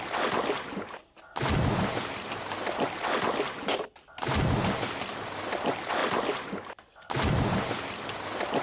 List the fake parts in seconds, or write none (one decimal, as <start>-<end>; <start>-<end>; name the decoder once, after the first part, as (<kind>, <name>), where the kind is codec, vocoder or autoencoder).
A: none